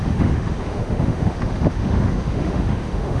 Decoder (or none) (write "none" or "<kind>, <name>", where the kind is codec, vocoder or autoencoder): autoencoder, DAC-VAE